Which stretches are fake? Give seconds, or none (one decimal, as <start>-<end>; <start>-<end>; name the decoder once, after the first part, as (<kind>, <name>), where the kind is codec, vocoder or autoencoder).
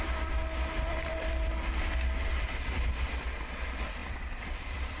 4.0-5.0 (vocoder, BigVGAN v2)